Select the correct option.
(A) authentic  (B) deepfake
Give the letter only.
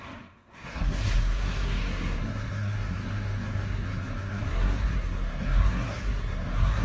B